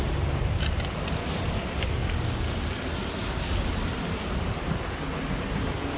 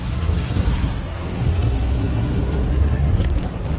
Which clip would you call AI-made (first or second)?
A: second